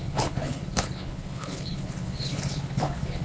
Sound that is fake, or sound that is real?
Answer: fake